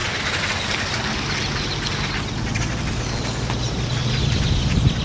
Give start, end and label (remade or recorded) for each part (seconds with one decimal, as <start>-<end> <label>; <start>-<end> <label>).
0.0-4.2 recorded; 4.2-5.0 remade